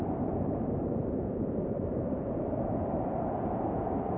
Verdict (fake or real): real